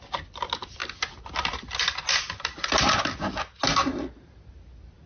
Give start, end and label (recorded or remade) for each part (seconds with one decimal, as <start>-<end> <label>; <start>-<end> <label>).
0.0-5.1 recorded